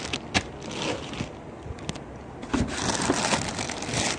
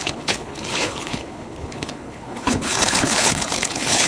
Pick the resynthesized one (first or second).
second